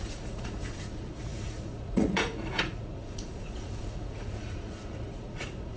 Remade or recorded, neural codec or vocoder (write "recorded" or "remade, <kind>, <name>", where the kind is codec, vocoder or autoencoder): remade, vocoder, Vocos